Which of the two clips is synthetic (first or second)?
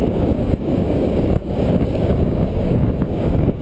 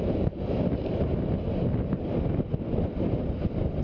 first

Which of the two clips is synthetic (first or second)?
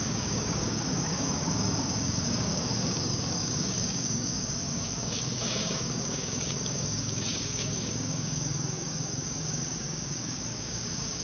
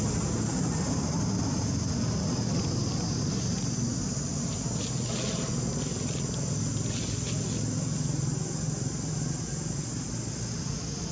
first